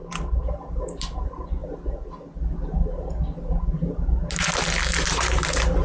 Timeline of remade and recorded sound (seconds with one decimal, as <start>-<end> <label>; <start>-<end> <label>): 0.0-0.7 recorded; 0.7-1.6 remade; 1.6-5.1 recorded; 5.1-5.8 remade